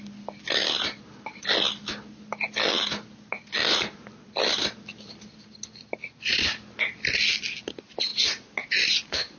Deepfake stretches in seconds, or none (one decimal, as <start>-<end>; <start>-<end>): none